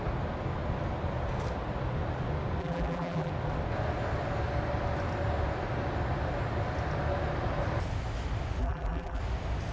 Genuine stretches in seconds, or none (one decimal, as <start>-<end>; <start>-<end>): 0.0-2.6; 3.3-8.6; 9.2-9.7